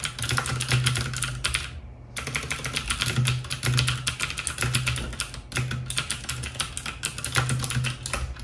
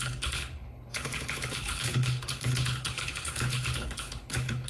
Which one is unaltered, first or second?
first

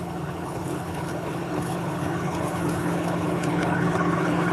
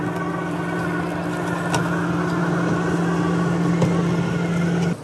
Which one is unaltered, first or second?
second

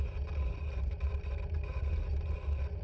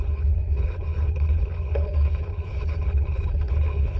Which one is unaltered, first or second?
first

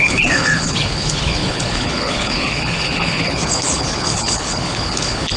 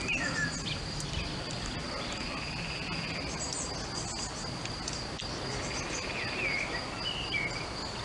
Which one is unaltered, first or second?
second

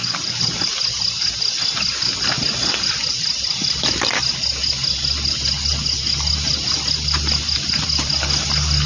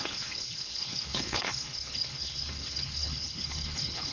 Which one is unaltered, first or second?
first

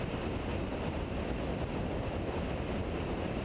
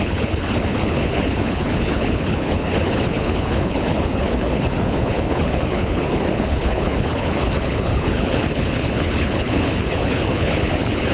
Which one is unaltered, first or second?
first